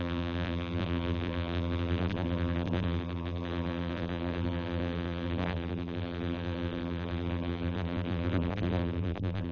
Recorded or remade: remade